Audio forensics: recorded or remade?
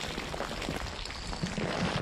recorded